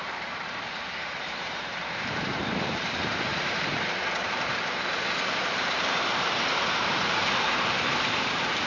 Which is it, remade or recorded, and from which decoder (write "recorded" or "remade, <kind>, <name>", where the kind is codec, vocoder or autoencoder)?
remade, vocoder, BigVGAN v2